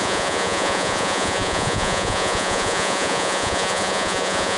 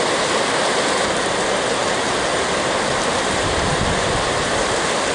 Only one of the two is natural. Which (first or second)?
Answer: second